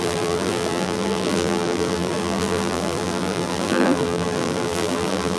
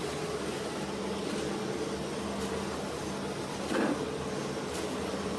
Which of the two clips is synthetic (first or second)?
first